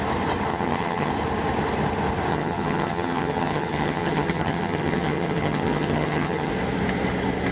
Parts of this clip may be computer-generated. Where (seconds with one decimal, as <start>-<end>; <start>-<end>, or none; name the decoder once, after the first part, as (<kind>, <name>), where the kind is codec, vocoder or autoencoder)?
0.5-1.1 (vocoder, HiFi-GAN); 2.3-6.5